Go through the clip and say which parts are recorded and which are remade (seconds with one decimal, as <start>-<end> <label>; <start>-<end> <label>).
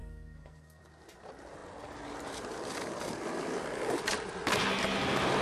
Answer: 0.0-0.8 remade; 0.8-5.4 recorded